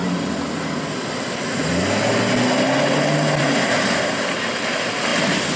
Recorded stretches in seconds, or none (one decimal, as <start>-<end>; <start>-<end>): 0.0-5.6